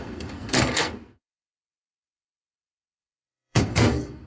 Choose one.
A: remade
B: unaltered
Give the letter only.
A